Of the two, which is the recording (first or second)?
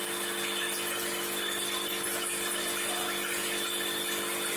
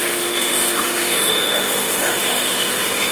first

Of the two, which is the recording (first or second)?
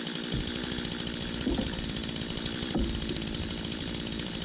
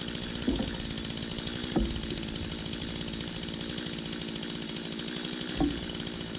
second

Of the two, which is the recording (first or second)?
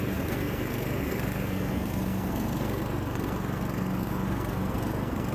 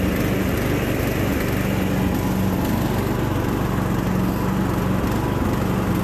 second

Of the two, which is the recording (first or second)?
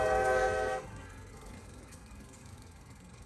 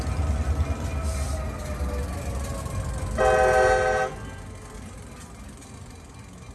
second